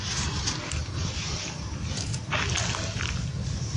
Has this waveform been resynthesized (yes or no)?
no